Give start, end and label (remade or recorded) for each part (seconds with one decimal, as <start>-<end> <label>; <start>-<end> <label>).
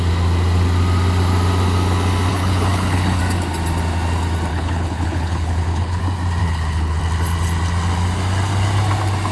0.0-2.3 recorded; 2.3-3.2 remade; 3.2-4.5 recorded; 4.5-6.0 remade; 6.0-6.4 recorded; 6.4-7.0 remade; 7.0-9.3 recorded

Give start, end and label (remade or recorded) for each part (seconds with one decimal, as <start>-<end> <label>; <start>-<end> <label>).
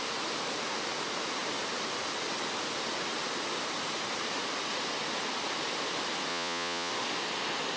0.0-6.3 recorded; 6.3-6.9 remade; 6.9-7.8 recorded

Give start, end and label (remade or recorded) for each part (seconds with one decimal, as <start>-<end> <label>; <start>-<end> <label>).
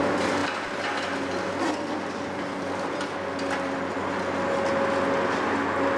0.0-6.0 recorded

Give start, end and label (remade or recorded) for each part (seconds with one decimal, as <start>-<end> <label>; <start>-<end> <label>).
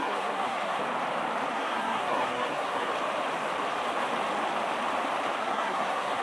0.0-0.8 remade; 0.8-1.5 recorded; 1.5-2.9 remade; 2.9-5.4 recorded; 5.4-6.2 remade